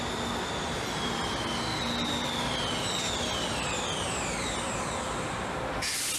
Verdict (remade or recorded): recorded